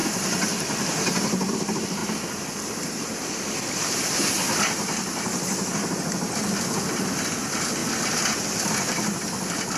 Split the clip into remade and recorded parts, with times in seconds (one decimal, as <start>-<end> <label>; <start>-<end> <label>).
0.0-1.5 recorded; 1.5-7.8 remade; 7.8-8.7 recorded; 8.7-9.8 remade